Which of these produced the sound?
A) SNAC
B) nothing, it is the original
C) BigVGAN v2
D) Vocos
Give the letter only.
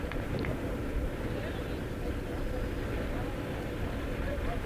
B